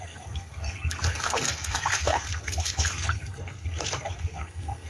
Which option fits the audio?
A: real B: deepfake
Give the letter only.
B